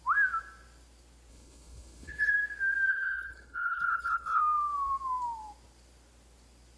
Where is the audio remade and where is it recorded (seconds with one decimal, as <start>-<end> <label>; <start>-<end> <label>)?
0.0-1.3 recorded; 1.3-2.3 remade; 2.3-2.9 recorded; 2.9-4.4 remade; 4.4-6.8 recorded